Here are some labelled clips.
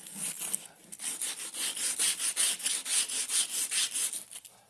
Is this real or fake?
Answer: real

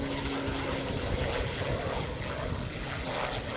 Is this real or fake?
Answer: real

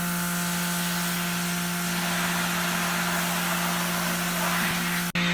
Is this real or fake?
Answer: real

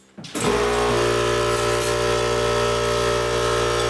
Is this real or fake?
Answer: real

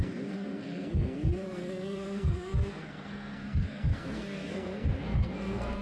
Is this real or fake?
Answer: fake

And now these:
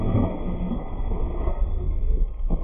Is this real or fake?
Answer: fake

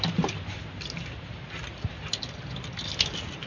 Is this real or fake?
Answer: real